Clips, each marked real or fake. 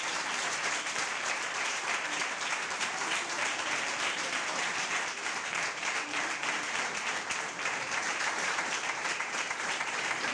fake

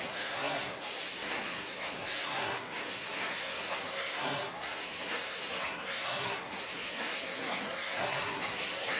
fake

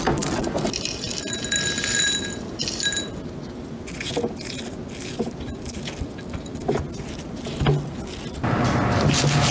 real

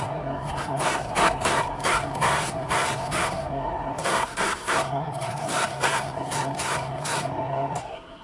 fake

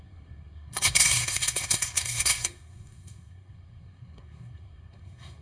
fake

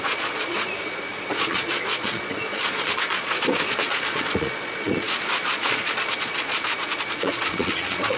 fake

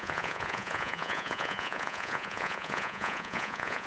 fake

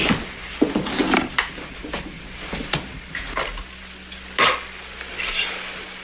real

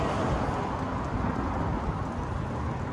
real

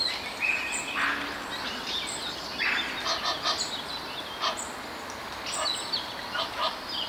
real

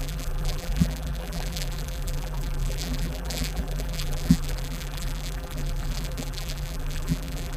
fake